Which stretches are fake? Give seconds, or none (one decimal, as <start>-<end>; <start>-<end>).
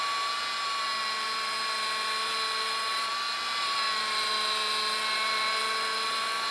none